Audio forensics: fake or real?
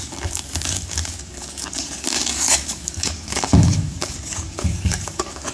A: fake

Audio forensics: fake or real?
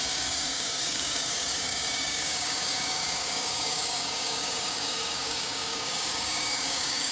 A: fake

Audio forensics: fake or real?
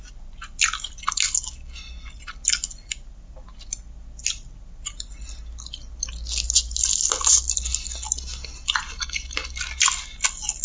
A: real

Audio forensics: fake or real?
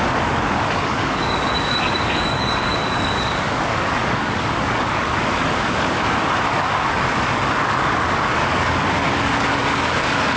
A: fake